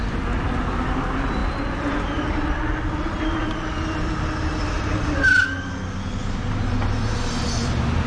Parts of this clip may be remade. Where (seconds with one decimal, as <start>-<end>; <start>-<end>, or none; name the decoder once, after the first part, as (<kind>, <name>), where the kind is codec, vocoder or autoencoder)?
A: none